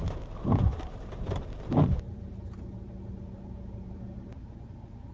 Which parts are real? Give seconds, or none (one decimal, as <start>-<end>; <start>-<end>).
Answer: none